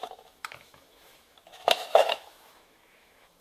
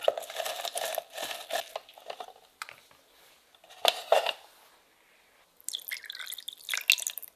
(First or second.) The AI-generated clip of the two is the first